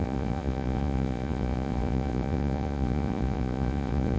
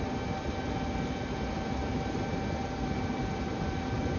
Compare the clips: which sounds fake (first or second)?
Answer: first